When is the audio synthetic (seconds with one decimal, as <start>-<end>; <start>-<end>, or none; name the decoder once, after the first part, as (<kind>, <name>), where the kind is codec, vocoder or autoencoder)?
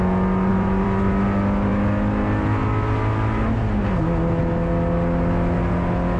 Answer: 0.5-1.1 (vocoder, BigVGAN v2)